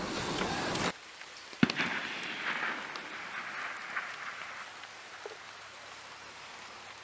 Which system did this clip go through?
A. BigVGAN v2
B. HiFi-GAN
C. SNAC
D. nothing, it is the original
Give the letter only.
D